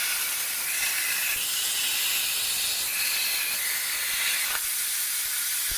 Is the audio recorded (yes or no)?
yes